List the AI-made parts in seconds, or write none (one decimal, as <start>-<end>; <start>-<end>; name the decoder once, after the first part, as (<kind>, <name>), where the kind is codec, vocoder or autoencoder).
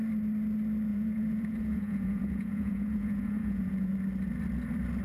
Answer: 0.9-3.9 (vocoder, Vocos)